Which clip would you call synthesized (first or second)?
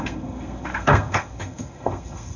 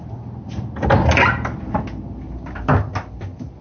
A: first